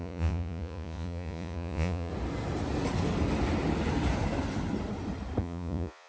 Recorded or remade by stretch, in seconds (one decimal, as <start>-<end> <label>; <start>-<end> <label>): 0.0-2.1 remade; 2.1-5.4 recorded; 5.4-6.1 remade